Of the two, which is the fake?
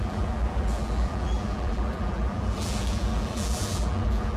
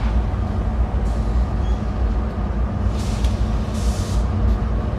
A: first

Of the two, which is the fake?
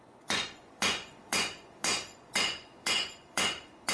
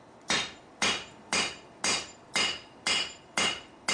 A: first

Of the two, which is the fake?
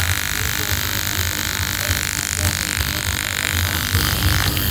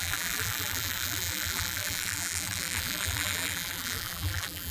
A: second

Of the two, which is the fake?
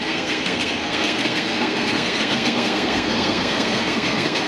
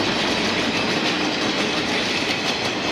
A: first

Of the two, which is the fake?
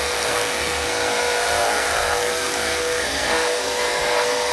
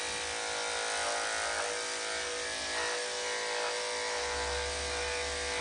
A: first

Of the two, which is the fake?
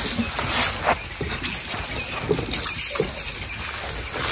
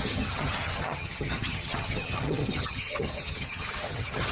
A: second